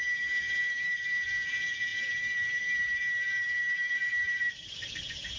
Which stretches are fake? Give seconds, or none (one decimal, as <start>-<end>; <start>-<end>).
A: 0.0-5.4